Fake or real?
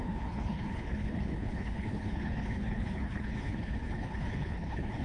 fake